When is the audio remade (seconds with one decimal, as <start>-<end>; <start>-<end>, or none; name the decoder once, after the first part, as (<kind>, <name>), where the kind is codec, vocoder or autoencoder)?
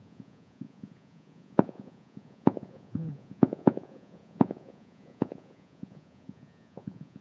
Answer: 0.0-7.2 (vocoder, Vocos)